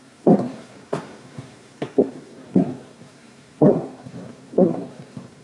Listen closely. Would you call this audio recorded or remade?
remade